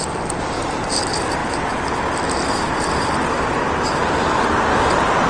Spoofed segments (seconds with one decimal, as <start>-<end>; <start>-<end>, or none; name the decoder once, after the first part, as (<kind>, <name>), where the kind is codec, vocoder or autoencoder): 0.0-1.4 (vocoder, BigVGAN v2); 2.7-4.0